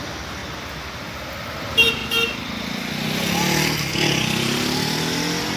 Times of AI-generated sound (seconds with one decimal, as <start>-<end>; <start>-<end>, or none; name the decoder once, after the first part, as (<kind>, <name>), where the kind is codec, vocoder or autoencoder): 0.0-0.4 (vocoder, BigVGAN v2); 1.1-2.0